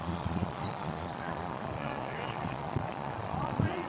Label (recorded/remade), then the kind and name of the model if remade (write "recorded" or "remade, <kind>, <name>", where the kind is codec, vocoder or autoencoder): remade, vocoder, Vocos